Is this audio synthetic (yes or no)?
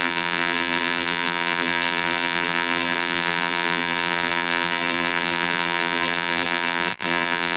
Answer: yes